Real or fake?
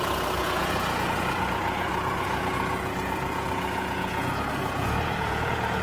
fake